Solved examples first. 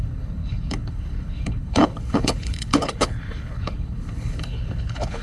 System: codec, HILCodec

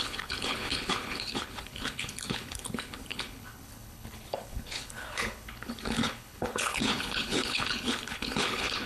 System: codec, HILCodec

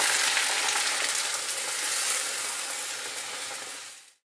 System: none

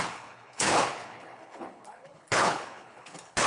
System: codec, HILCodec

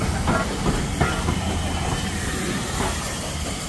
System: none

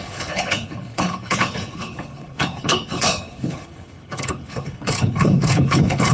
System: codec, HILCodec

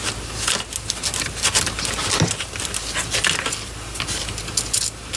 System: none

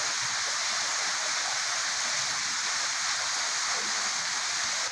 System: none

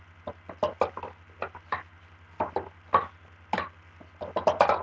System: none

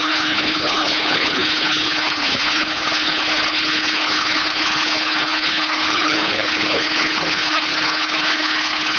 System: codec, HILCodec